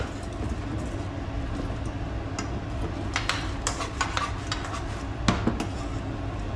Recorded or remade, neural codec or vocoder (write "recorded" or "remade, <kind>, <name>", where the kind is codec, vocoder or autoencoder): recorded